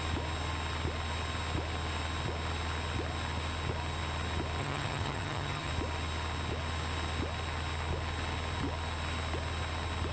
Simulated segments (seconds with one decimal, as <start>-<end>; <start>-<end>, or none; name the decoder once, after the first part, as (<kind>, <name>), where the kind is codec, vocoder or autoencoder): 4.6-5.7 (vocoder, HiFi-GAN)